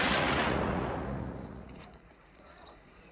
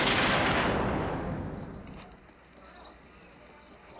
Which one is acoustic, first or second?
second